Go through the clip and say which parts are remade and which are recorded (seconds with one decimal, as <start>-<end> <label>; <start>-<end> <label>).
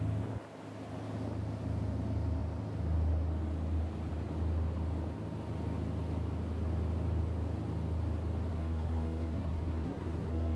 0.0-8.5 recorded; 8.5-10.6 remade